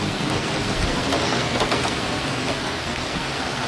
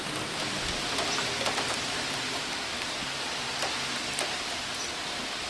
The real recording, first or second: second